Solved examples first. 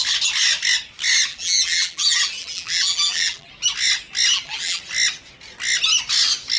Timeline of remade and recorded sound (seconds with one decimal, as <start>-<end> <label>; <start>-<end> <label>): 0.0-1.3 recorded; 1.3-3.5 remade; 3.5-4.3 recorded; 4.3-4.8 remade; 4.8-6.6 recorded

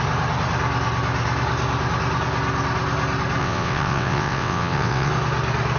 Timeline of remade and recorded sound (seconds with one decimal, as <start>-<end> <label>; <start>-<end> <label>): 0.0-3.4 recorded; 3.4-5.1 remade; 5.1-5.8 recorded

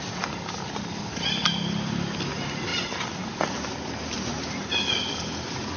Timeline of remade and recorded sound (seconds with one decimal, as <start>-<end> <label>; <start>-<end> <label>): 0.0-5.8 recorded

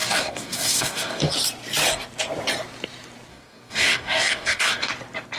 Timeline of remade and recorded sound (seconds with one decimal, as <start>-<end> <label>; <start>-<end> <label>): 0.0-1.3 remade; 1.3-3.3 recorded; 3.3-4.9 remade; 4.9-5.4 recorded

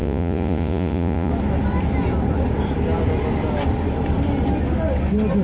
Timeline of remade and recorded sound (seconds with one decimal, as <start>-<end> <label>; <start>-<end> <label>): 0.0-1.3 remade; 1.3-5.4 recorded